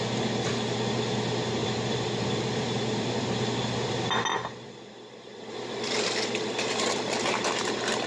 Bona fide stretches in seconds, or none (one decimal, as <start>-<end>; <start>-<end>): 0.0-1.6; 3.9-8.1